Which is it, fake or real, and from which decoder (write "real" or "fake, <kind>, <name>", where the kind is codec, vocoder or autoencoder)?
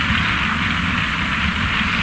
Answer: real